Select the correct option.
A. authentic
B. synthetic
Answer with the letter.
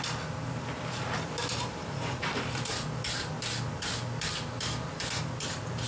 B